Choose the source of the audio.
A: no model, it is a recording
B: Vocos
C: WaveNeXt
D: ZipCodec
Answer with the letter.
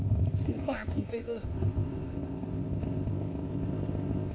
D